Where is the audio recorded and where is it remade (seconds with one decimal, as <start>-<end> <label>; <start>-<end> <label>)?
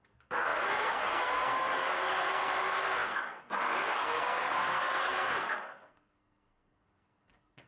0.0-7.7 remade